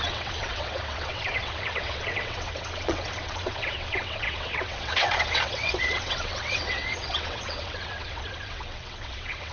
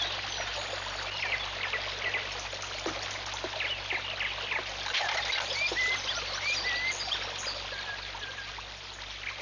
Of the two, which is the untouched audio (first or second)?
second